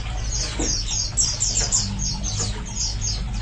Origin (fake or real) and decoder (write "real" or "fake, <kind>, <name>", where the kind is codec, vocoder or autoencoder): real